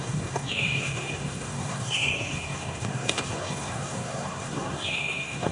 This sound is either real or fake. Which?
fake